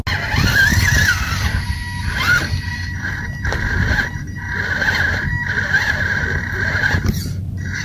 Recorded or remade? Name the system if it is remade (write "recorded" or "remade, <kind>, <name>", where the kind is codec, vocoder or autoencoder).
recorded